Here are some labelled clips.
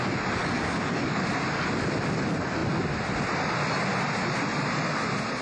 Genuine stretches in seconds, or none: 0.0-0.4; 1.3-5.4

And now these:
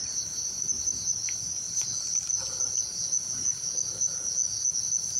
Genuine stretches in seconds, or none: 1.9-5.2

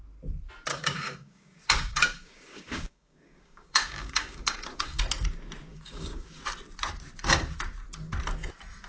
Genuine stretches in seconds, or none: 0.0-0.7; 5.0-5.7; 6.4-8.9

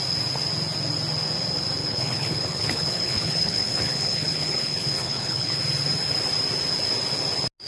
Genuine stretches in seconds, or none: 0.0-1.8; 5.6-7.7